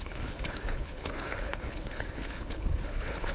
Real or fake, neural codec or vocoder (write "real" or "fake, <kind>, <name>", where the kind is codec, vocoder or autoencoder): fake, codec, HILCodec